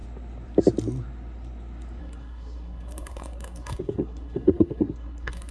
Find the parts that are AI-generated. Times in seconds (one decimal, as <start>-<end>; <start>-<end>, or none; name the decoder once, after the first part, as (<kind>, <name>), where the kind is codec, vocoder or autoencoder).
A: 2.0-5.5 (codec, SNAC)